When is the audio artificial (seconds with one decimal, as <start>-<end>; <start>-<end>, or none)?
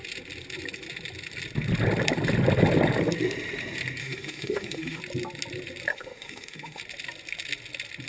4.0-5.0; 5.9-6.8